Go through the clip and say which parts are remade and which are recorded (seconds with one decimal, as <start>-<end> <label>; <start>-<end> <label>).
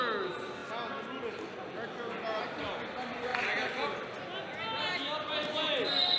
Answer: 0.0-6.2 recorded